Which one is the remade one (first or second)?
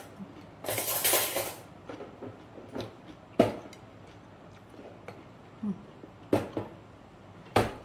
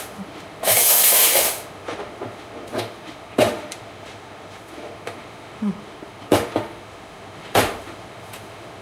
second